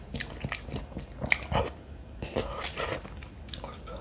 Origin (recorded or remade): recorded